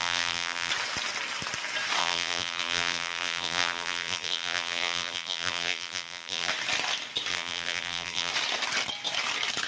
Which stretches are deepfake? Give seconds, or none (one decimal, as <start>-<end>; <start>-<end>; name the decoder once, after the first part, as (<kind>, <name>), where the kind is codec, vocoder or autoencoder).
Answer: 0.0-0.7 (vocoder, BigVGAN v2); 2.0-6.5; 7.3-8.3